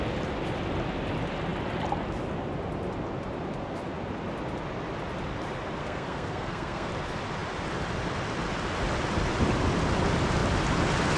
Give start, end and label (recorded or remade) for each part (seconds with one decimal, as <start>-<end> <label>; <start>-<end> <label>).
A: 0.0-5.8 recorded; 5.8-6.9 remade; 6.9-11.2 recorded